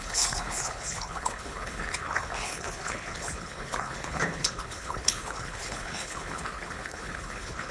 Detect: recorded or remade remade